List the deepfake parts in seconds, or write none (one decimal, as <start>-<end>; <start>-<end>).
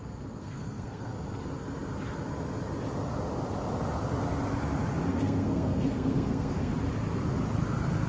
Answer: 0.4-1.1; 5.1-6.7